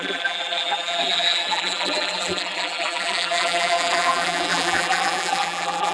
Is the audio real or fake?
fake